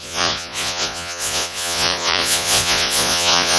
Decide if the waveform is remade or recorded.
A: remade